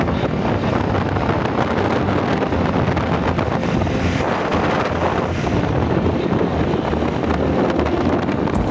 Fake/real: real